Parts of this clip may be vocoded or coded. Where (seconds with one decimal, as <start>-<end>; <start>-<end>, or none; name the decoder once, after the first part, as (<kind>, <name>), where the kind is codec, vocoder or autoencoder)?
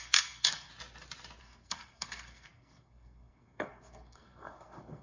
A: 0.0-0.7 (codec, SNAC); 1.4-5.0